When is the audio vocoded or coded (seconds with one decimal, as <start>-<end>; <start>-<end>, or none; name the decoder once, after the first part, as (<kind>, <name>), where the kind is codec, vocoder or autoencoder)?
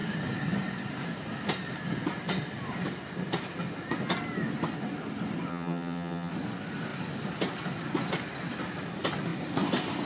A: 5.5-6.3 (vocoder, HiFi-GAN)